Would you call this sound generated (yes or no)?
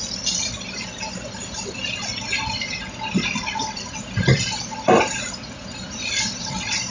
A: yes